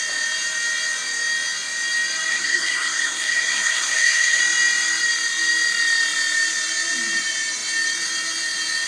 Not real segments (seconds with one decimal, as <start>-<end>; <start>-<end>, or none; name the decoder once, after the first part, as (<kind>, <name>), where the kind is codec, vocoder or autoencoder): 2.3-4.4 (codec, SNAC)